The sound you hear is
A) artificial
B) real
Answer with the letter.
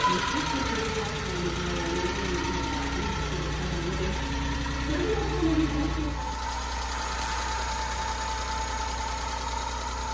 B